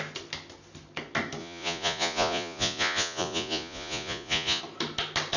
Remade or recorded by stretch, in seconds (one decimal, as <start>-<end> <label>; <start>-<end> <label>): 0.0-1.4 recorded; 1.4-4.6 remade; 4.6-5.4 recorded